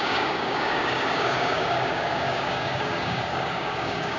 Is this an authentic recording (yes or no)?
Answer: no